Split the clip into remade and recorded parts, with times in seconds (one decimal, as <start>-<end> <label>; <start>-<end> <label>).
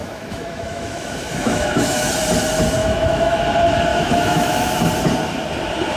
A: 0.0-2.1 remade; 2.1-2.8 recorded; 2.8-3.4 remade; 3.4-3.9 recorded; 3.9-4.7 remade; 4.7-6.0 recorded